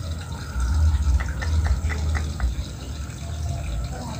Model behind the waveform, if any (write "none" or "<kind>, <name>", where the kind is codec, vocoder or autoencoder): none